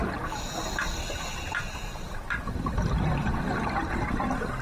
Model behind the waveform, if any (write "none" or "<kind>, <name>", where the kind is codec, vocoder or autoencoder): none